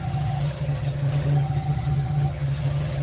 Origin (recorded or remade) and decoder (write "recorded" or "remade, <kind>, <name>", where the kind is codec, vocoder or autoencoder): remade, vocoder, HiFi-GAN